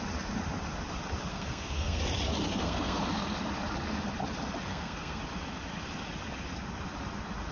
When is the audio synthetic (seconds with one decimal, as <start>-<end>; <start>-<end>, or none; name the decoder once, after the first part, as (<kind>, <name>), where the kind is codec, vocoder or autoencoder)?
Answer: 1.3-2.0 (codec, SNAC); 2.5-3.0; 4.7-5.2